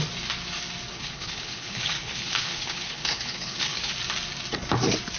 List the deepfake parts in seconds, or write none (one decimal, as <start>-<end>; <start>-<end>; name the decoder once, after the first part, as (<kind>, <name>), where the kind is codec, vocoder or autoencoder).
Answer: 0.9-3.9 (codec, HILCodec)